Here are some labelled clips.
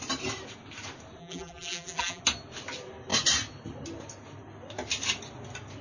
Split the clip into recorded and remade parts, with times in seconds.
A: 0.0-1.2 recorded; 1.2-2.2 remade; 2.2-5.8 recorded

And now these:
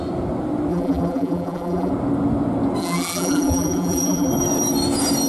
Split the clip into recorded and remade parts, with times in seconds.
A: 0.0-0.7 recorded; 0.7-1.9 remade; 1.9-2.8 recorded; 2.8-4.3 remade; 4.3-5.3 recorded

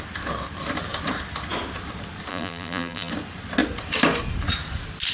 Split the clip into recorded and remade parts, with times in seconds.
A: 0.0-2.3 recorded; 2.3-3.1 remade; 3.1-5.1 recorded